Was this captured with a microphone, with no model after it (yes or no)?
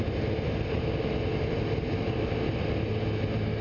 yes